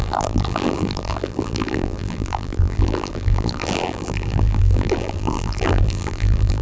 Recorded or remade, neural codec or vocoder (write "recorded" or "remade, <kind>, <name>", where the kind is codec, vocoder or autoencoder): remade, vocoder, BigVGAN v2